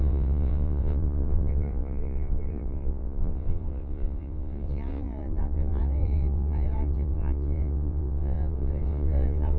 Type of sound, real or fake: fake